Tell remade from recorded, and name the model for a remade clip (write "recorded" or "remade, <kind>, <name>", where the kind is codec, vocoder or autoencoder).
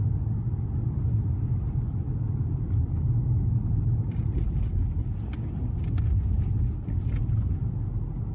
recorded